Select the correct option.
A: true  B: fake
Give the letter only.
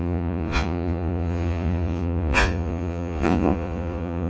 B